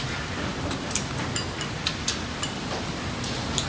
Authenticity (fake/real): real